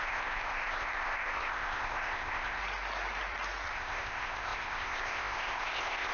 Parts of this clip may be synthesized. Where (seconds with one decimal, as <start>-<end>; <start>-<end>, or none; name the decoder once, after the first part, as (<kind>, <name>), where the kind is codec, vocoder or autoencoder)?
0.0-2.6 (codec, ZipCodec); 3.7-6.1